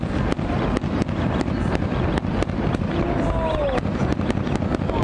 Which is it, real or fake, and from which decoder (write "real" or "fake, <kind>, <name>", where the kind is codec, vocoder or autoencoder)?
real